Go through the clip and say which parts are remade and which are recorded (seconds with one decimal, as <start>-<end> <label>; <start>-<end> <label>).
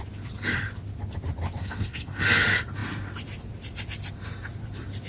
0.0-1.6 recorded; 1.6-2.2 remade; 2.2-5.1 recorded